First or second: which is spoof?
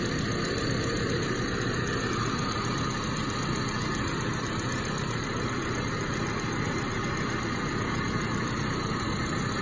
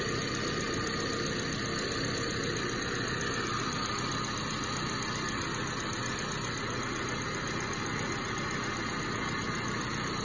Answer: first